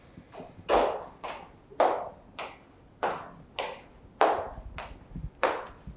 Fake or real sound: real